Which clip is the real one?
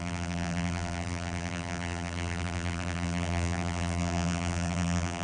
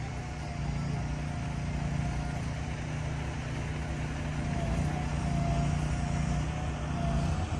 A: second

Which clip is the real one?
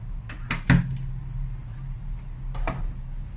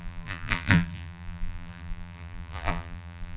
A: first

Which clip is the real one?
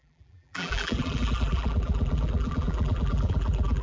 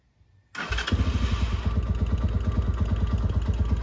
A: second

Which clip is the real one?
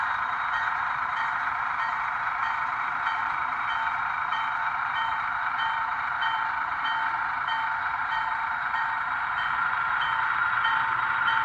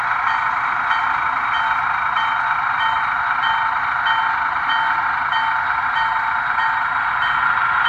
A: second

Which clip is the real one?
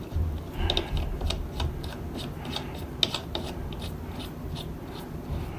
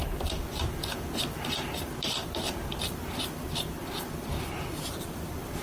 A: first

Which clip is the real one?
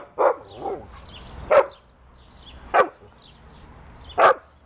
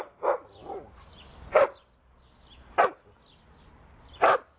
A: first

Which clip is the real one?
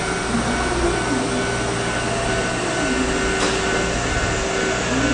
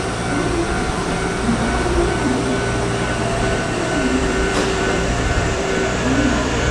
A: first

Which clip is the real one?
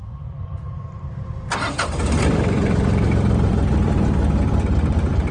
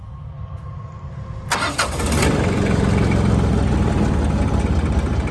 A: second